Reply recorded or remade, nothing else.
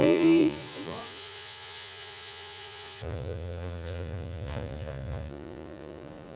remade